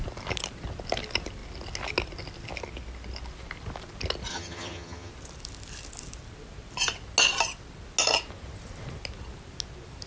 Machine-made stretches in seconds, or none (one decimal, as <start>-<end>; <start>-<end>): 4.3-5.1